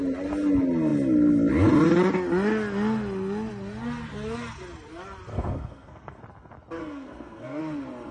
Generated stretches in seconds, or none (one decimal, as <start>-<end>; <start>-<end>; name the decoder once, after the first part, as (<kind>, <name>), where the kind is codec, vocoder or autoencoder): 5.3-6.2 (codec, SNAC); 6.8-7.6